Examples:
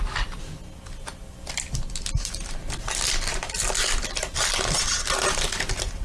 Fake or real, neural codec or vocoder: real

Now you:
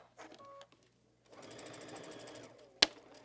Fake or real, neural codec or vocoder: real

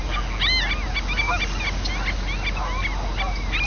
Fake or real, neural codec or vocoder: real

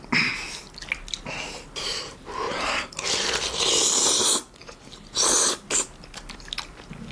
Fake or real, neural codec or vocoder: real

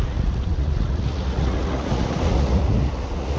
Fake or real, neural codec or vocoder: fake, vocoder, Vocos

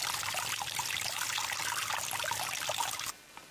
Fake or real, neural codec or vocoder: real